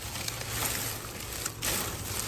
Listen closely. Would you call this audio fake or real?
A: real